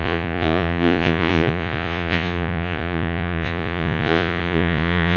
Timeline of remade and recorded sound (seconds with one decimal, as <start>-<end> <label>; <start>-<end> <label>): 0.0-5.2 remade